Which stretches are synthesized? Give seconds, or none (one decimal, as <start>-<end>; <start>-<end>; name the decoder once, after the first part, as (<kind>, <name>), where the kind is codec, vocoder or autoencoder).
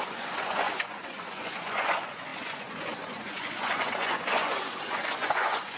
0.0-5.8 (vocoder, Vocos)